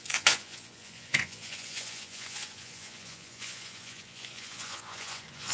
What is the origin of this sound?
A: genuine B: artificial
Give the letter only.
B